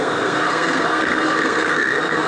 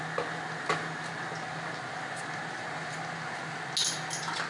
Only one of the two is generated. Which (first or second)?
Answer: first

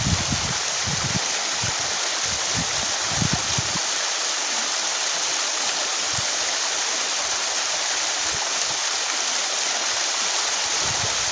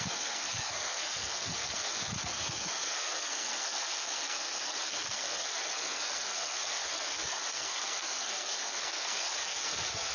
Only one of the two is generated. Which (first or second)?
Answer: second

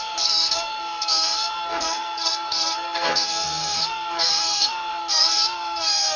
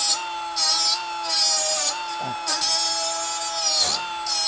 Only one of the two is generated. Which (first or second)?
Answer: first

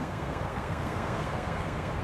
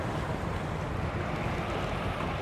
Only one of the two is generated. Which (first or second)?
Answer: first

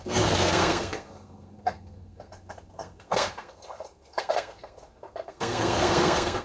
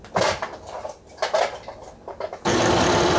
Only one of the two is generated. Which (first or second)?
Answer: first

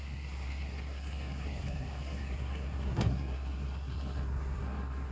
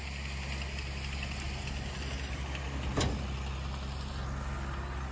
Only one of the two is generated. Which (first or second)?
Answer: first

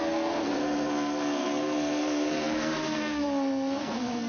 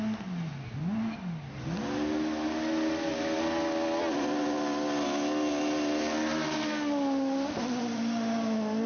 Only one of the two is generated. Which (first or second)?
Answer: first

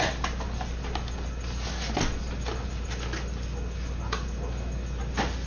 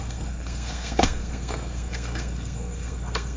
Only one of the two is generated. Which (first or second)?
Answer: second